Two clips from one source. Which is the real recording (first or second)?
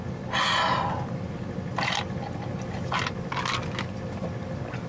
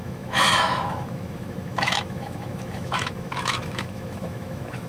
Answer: first